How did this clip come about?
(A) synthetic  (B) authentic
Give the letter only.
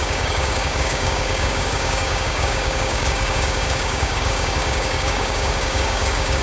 A